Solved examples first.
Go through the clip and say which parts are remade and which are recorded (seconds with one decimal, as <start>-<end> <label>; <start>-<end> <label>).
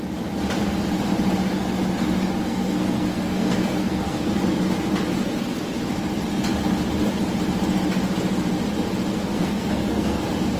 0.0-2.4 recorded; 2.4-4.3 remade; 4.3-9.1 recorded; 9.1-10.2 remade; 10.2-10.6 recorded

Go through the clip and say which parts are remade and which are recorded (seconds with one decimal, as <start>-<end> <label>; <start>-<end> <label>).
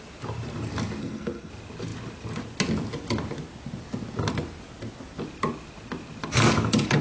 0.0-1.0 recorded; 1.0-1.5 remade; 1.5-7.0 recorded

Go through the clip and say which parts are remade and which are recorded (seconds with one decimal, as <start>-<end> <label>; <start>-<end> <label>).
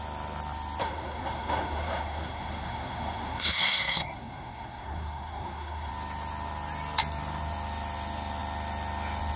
0.0-0.8 recorded; 0.8-5.9 remade; 5.9-9.4 recorded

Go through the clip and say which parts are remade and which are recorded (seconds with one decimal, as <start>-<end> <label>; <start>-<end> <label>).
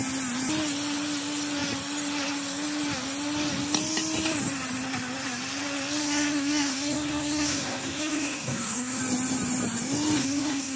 0.0-6.0 recorded; 6.0-9.0 remade; 9.0-10.2 recorded; 10.2-10.8 remade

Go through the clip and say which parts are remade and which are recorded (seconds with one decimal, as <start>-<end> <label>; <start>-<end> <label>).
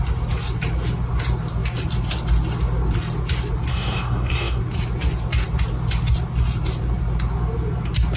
0.0-3.7 recorded; 3.7-4.6 remade; 4.6-8.2 recorded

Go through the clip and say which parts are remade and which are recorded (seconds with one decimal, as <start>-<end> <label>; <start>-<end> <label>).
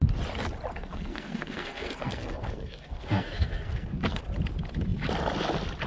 0.0-0.7 recorded; 0.7-4.2 remade; 4.2-5.9 recorded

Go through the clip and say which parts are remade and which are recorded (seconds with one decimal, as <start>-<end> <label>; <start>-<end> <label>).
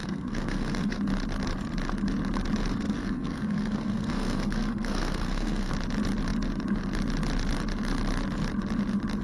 0.0-1.0 remade; 1.0-2.7 recorded; 2.7-5.7 remade; 5.7-9.2 recorded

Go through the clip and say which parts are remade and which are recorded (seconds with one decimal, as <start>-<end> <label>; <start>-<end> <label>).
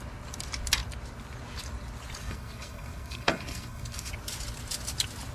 0.0-2.2 recorded; 2.2-4.1 remade; 4.1-5.3 recorded